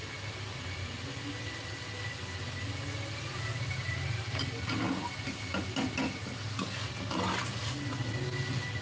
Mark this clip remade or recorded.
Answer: recorded